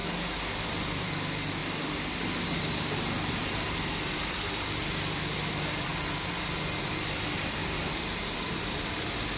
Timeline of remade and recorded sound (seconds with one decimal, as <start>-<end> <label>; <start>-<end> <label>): 0.0-0.6 recorded; 0.6-1.6 remade; 1.6-3.3 recorded; 3.3-5.9 remade; 5.9-6.8 recorded; 6.8-9.4 remade